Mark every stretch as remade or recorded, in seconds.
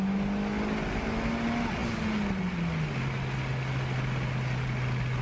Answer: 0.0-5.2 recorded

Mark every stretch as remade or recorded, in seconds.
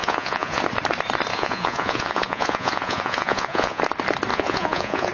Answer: 0.0-0.6 remade; 0.6-1.3 recorded; 1.3-3.8 remade; 3.8-4.3 recorded; 4.3-5.1 remade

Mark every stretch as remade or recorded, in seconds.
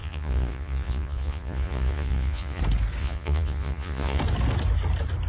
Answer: 0.0-2.6 remade; 2.6-3.0 recorded; 3.0-4.2 remade; 4.2-5.3 recorded